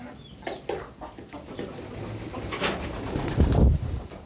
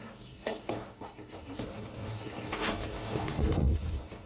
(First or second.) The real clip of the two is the first